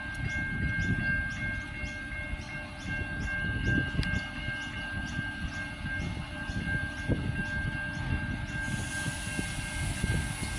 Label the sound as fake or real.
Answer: real